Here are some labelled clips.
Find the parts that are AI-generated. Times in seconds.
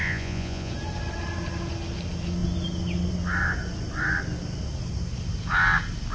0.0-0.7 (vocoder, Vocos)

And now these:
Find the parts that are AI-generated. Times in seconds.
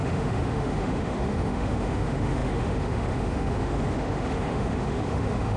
0.0-5.6 (autoencoder, DAC-VAE)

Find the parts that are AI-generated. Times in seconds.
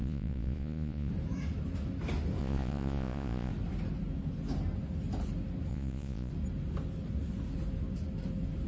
0.0-1.1 (vocoder, Vocos); 2.4-3.5; 5.7-6.3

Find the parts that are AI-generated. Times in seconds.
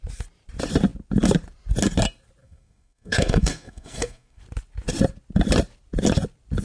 2.4-4.4 (codec, SNAC)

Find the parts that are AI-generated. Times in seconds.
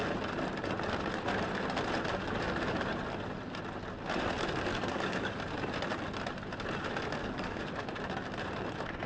4.7-5.3 (codec, DAC); 7.2-7.7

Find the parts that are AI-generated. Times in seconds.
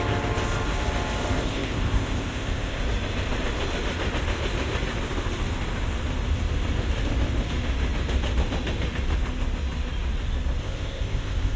1.4-2.8 (codec, ZipCodec); 10.6-11.6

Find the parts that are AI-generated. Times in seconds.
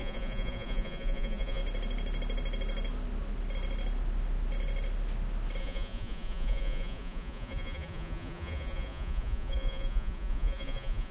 0.0-1.6 (vocoder, Vocos); 5.6-11.1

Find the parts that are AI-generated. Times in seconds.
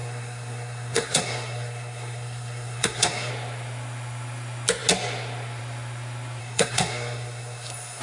0.0-3.3 (codec, SNAC); 6.4-8.0